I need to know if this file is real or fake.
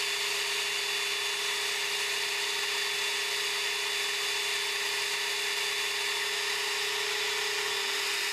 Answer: real